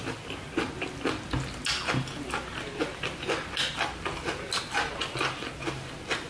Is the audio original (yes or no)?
yes